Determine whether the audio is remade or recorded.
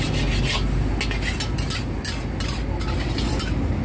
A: recorded